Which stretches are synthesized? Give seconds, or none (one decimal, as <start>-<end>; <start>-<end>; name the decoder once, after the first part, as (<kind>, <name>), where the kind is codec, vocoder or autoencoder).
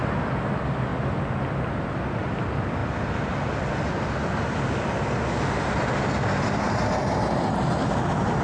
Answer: none